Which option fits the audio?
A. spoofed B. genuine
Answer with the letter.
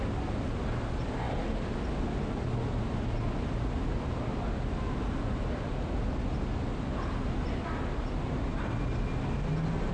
B